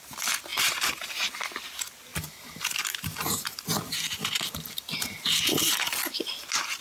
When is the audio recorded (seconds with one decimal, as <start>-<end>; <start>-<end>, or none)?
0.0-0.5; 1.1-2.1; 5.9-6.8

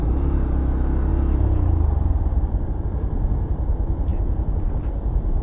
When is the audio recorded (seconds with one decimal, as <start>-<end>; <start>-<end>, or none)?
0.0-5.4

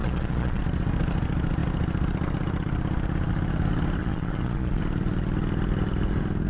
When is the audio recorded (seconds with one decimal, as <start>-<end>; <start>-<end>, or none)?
0.6-4.0; 4.8-6.5

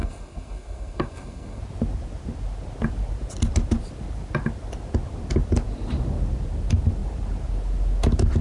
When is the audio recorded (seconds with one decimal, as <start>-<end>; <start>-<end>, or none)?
1.6-8.4

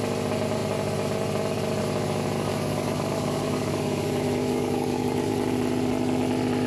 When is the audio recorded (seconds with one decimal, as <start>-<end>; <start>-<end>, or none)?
0.0-2.5; 5.3-6.7

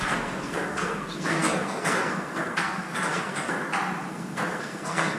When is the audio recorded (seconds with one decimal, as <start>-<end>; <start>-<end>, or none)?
3.6-4.1